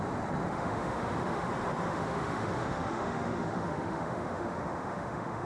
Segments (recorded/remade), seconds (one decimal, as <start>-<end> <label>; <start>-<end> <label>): 0.0-0.5 recorded; 0.5-1.5 remade; 1.5-1.9 recorded; 1.9-5.5 remade